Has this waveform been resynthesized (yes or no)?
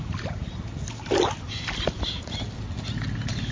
no